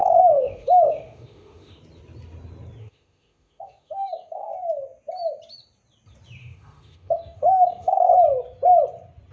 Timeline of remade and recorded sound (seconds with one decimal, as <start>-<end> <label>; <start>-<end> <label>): 0.0-1.8 remade; 1.8-2.8 recorded; 2.8-4.5 remade; 4.5-6.4 recorded; 6.4-8.1 remade; 8.1-9.3 recorded